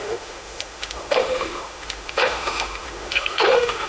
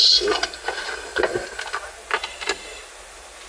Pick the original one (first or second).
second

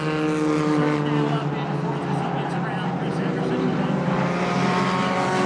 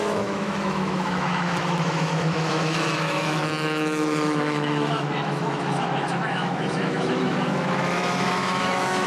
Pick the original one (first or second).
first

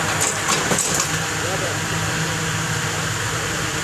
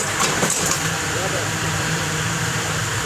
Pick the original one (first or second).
first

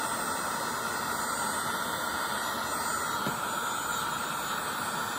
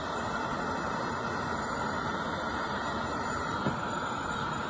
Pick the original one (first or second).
first